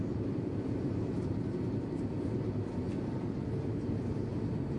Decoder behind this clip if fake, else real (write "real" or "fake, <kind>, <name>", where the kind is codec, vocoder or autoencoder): fake, vocoder, BigVGAN v2